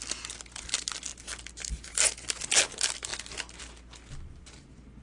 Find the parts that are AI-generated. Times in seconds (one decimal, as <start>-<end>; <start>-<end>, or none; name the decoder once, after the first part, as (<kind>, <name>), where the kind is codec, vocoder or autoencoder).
none